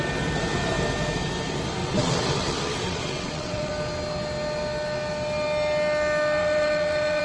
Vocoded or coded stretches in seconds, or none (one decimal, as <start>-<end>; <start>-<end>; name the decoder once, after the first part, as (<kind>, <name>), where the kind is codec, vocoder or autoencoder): 1.8-3.7 (vocoder, WaveNeXt); 6.4-7.2